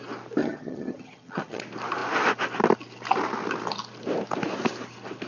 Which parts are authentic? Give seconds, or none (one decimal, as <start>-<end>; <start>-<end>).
0.0-0.4; 1.6-5.3